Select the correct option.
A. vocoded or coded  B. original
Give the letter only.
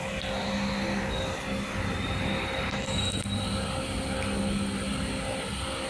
B